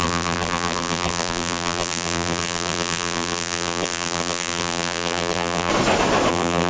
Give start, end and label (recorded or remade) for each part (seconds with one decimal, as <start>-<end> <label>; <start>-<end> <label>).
0.0-5.7 remade; 5.7-6.3 recorded; 6.3-6.7 remade